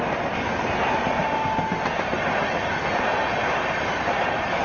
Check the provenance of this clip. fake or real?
real